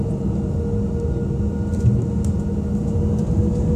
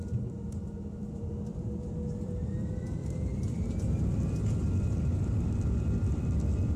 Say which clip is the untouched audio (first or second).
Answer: first